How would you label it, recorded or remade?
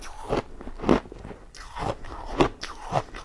recorded